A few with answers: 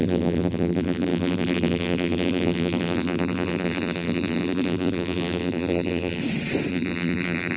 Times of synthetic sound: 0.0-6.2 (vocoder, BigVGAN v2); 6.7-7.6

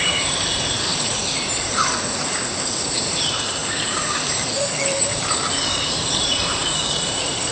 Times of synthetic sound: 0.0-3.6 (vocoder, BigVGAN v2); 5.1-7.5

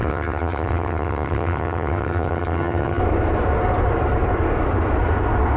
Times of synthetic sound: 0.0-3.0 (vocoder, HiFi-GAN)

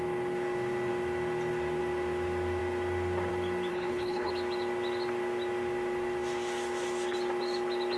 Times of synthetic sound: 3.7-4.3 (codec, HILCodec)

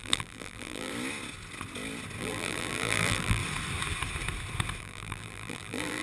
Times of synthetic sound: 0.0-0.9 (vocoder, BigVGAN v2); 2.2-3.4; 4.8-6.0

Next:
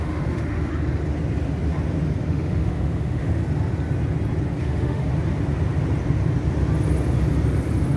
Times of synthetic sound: 0.0-0.7 (autoencoder, DAC-VAE); 2.3-3.4; 4.6-5.0